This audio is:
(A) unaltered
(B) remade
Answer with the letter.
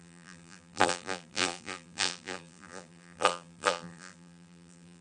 B